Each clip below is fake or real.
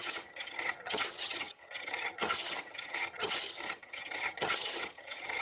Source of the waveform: fake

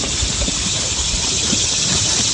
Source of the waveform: real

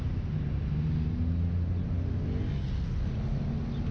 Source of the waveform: real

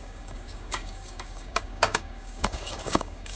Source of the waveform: fake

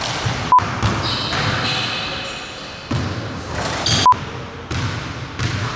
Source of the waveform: real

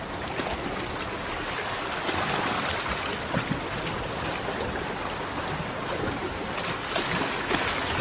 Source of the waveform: real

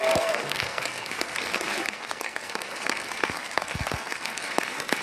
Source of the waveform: fake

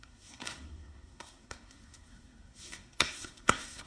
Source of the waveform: fake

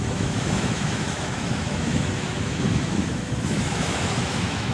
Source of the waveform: fake